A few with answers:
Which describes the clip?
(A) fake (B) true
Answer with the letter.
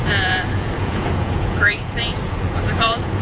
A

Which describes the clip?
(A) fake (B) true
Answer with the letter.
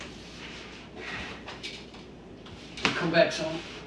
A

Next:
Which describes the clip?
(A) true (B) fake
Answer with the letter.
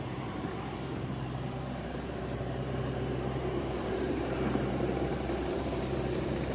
B